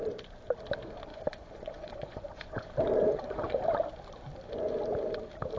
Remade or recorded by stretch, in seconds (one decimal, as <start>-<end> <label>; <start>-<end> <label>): 0.0-1.1 recorded; 1.1-2.7 remade; 2.7-3.1 recorded; 3.1-3.6 remade; 3.6-5.6 recorded